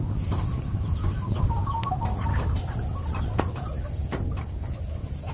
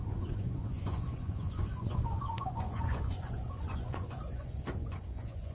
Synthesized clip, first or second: second